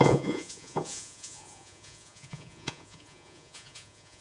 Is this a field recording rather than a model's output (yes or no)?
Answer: no